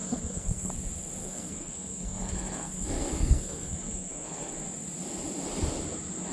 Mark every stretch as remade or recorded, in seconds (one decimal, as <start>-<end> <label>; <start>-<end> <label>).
0.0-0.7 remade; 0.7-1.2 recorded; 1.2-4.5 remade; 4.5-6.3 recorded